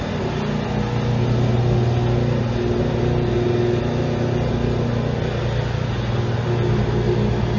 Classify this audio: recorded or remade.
recorded